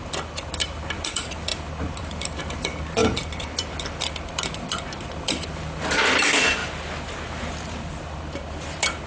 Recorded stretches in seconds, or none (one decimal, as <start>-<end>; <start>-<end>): 0.0-1.5; 2.4-3.0; 3.7-9.1